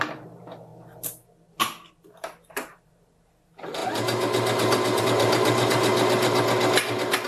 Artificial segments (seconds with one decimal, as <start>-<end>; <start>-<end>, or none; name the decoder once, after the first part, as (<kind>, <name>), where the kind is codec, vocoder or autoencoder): 0.0-0.7 (vocoder, BigVGAN v2); 1.9-3.8; 5.0-5.9